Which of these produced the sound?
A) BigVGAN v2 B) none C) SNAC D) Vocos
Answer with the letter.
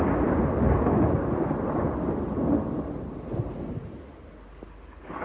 B